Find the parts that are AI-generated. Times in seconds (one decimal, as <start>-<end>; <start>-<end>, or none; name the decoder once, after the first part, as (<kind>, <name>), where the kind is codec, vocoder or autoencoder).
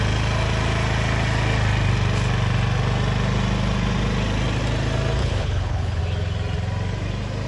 5.2-6.0 (codec, HILCodec)